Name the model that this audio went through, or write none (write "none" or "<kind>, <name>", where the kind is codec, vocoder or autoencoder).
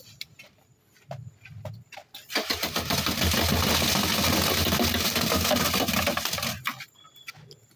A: none